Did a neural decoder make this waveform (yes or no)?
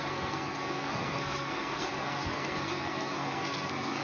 yes